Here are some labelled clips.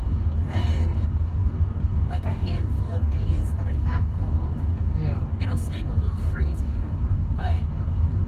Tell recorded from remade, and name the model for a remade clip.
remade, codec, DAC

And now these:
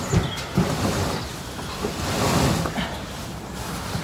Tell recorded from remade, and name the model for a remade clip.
recorded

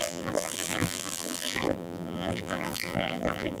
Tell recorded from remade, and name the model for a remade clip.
remade, vocoder, BigVGAN v2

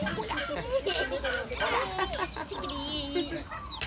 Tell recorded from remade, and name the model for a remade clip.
recorded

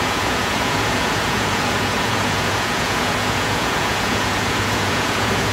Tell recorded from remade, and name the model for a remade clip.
remade, vocoder, Vocos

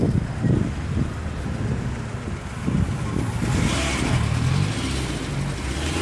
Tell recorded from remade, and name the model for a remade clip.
recorded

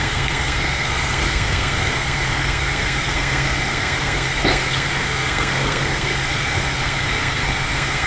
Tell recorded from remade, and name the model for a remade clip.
remade, codec, SNAC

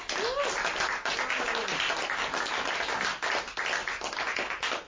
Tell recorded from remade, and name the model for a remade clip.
recorded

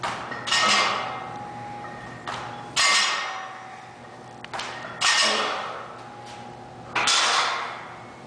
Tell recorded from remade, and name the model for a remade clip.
recorded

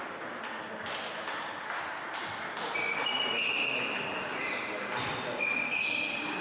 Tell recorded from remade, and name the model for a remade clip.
recorded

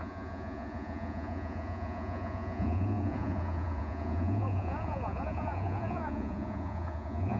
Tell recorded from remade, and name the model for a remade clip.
remade, vocoder, Vocos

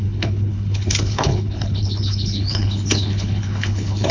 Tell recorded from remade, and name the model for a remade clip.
remade, codec, HILCodec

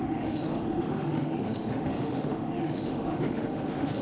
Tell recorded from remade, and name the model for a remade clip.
remade, autoencoder, DAC-VAE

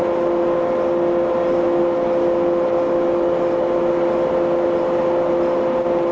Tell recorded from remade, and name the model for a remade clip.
recorded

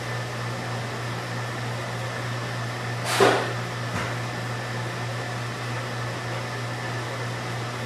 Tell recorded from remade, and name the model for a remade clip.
recorded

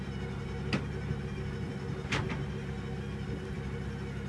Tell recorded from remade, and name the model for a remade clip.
recorded